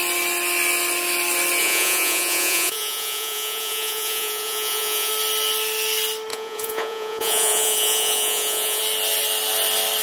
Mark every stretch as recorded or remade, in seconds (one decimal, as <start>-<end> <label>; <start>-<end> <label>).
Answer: 0.0-1.6 recorded; 1.6-5.1 remade; 5.1-6.3 recorded; 6.3-8.8 remade; 8.8-10.0 recorded